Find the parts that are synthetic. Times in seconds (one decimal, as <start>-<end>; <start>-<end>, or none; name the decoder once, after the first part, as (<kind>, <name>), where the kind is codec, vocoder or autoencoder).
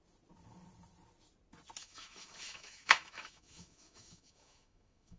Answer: 1.8-5.2 (autoencoder, DAC-VAE)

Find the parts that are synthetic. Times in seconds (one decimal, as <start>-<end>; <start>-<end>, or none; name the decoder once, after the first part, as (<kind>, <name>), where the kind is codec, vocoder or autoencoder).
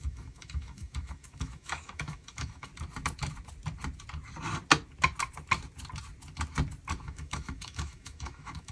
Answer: 0.0-2.7 (autoencoder, DAC-VAE); 7.0-8.7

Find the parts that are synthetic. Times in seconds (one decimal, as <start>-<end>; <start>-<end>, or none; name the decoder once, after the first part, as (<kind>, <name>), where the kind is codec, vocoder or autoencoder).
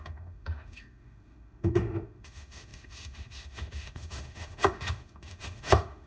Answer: 0.0-6.1 (autoencoder, DAC-VAE)